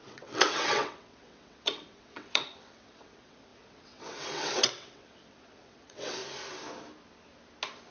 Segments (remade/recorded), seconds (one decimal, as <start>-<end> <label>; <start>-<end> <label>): 0.0-6.2 remade; 6.2-7.9 recorded